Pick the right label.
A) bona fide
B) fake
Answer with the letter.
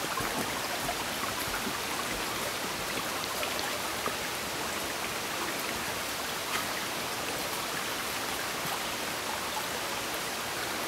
A